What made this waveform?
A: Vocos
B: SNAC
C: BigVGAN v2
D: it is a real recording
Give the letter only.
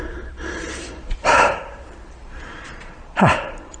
C